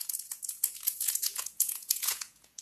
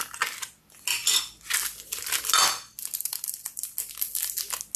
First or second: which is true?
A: second